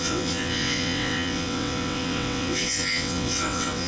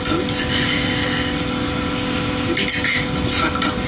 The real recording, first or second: second